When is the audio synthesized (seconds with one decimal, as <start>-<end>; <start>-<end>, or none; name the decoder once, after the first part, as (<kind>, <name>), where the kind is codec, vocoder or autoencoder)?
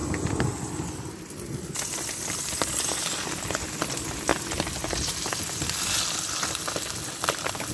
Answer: none